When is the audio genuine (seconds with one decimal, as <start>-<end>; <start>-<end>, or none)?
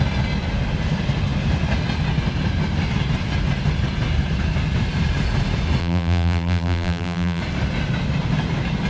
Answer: 0.0-5.8; 7.4-8.9